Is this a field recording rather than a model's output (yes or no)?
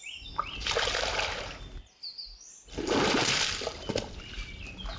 yes